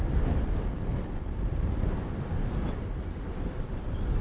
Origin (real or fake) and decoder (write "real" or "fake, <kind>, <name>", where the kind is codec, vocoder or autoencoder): real